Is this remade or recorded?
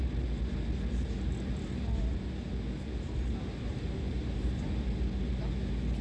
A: recorded